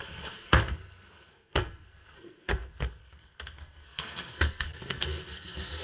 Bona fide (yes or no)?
no